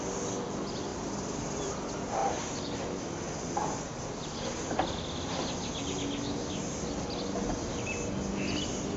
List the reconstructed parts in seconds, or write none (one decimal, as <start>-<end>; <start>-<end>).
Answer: 0.9-1.7; 2.2-3.1